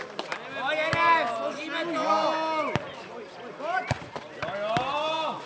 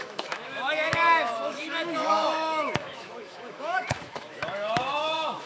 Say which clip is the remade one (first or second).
second